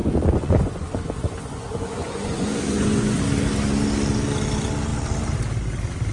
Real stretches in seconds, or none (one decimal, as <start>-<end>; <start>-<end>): 3.2-6.1

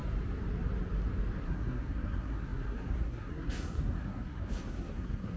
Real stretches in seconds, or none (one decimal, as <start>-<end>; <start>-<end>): 0.0-1.4

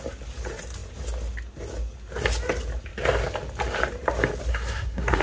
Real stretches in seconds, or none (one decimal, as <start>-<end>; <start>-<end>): 0.0-4.5